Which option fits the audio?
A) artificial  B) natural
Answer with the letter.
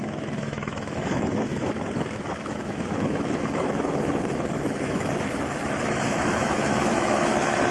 A